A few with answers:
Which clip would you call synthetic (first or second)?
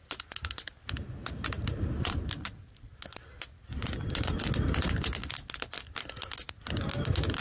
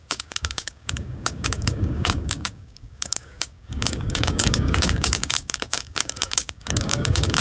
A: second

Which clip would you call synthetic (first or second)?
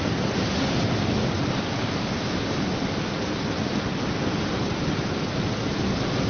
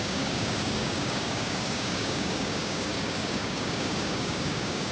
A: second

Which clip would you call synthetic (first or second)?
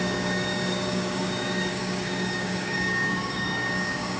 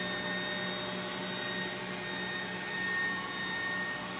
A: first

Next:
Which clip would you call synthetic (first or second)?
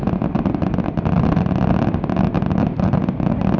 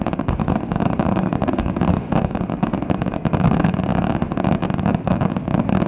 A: second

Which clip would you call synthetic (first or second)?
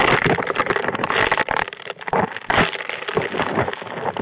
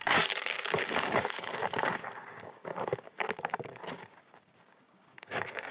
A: second